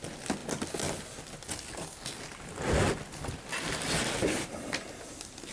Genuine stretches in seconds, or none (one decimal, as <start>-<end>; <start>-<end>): 0.0-4.2; 4.7-5.5